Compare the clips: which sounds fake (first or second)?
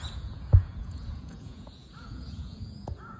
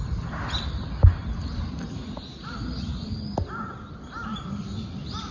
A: first